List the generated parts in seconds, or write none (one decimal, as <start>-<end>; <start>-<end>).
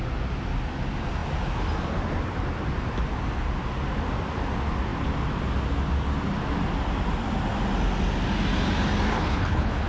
9.1-9.9